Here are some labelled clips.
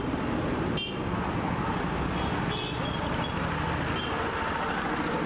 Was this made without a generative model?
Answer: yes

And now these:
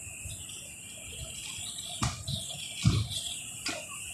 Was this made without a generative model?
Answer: yes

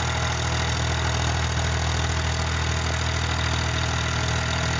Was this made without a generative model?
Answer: yes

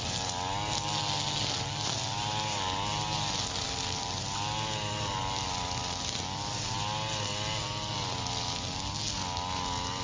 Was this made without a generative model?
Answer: yes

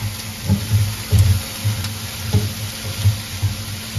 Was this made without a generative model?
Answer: yes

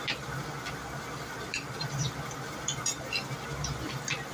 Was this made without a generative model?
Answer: yes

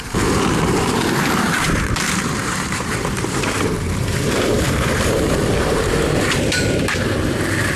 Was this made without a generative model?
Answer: no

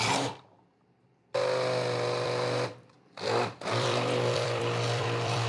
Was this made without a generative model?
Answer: no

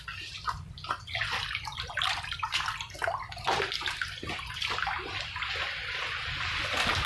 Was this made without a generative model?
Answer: yes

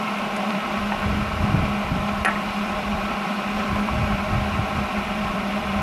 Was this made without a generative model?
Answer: no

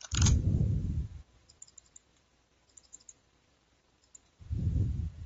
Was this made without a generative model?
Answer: no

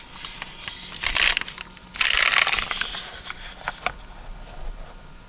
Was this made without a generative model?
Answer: yes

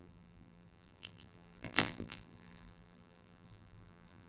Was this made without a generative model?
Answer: no